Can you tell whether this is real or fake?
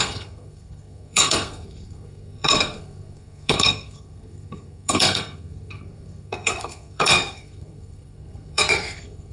fake